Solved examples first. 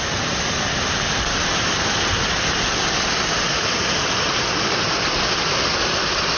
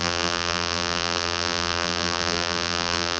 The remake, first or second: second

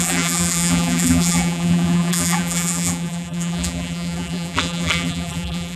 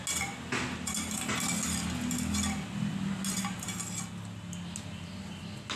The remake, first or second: first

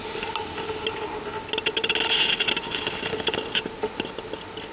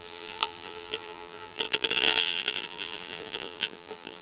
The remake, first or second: second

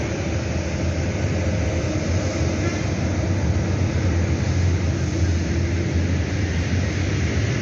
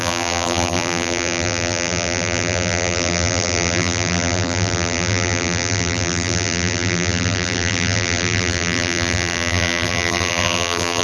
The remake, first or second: second